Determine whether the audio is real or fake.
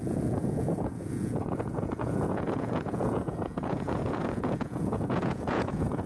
fake